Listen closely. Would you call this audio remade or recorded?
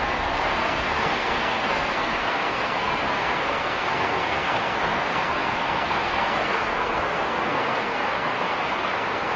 remade